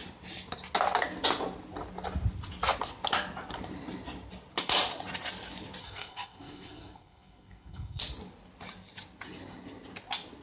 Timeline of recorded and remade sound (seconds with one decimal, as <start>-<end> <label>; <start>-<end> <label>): 0.0-5.8 recorded; 5.8-8.0 remade; 8.0-10.4 recorded